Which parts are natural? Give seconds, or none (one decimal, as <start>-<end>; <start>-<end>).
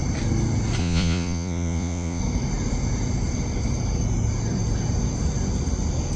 0.0-0.8; 2.2-6.2